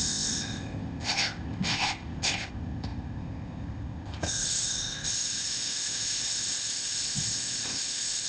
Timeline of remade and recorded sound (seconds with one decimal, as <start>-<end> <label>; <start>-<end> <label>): 0.0-8.3 remade